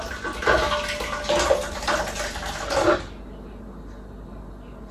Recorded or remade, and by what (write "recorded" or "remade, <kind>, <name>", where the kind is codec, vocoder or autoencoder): recorded